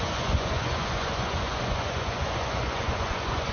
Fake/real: fake